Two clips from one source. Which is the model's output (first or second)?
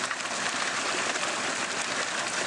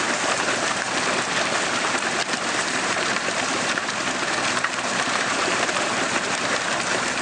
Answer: second